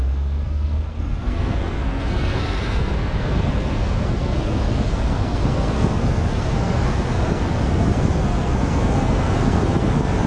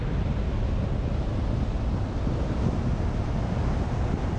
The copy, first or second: first